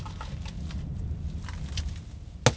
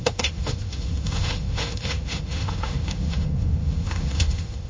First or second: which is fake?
second